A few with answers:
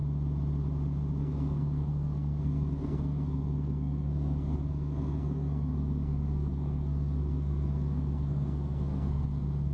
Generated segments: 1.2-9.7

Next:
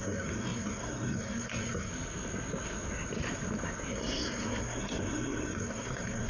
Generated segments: 0.0-1.9; 3.9-6.3

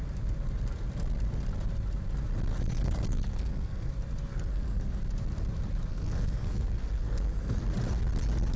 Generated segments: 2.5-3.9; 4.3-5.0; 5.9-7.6

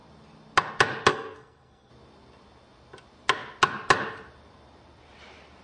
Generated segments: 1.1-1.9